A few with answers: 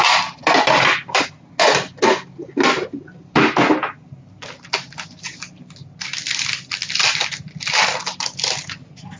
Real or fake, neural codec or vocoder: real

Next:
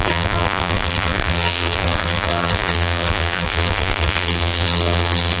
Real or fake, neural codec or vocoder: fake, vocoder, BigVGAN v2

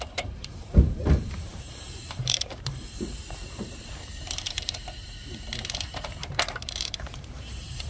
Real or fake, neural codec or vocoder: fake, vocoder, BigVGAN v2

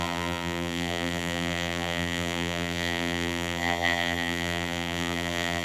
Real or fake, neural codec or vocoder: fake, vocoder, BigVGAN v2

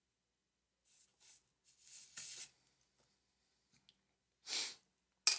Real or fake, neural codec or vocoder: real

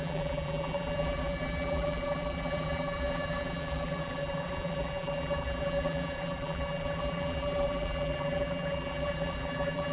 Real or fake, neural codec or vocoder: fake, vocoder, BigVGAN v2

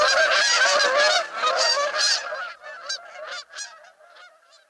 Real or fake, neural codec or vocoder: real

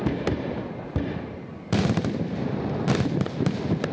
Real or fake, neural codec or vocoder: fake, vocoder, BigVGAN v2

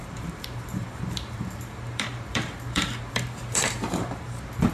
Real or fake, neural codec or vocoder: fake, vocoder, BigVGAN v2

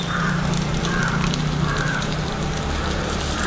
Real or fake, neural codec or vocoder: fake, vocoder, BigVGAN v2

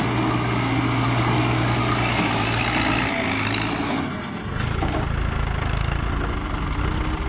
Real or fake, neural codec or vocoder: real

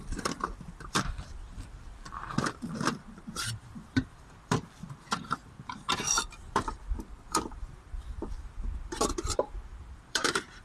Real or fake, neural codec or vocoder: fake, vocoder, BigVGAN v2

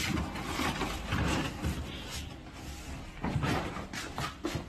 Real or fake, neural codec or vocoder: real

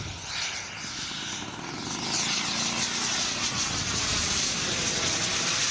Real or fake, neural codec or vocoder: real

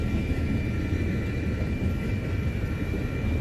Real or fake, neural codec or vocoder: real